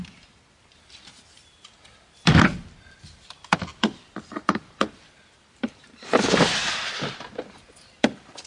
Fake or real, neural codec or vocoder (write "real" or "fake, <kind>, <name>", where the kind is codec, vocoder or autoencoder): fake, vocoder, BigVGAN v2